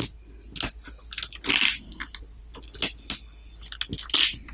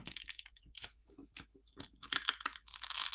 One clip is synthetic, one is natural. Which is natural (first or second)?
first